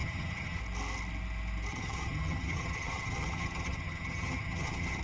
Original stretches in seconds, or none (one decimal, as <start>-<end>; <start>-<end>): 0.6-1.7